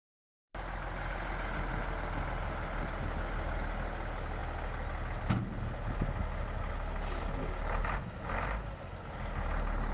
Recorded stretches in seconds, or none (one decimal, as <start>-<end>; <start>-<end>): 0.0-9.9